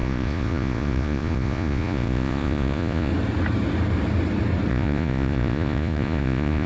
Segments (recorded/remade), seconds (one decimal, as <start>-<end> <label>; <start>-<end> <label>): 0.0-3.1 remade; 3.1-4.7 recorded; 4.7-6.7 remade